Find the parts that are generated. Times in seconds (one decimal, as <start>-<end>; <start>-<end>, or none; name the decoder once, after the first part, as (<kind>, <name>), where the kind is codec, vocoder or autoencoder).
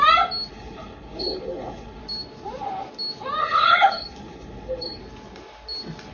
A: 0.5-2.0 (codec, HILCodec); 3.4-5.0